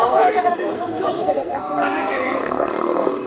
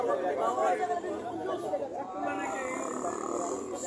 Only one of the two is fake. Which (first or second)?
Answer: first